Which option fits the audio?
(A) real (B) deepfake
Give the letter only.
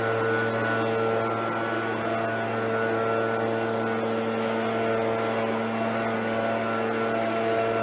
A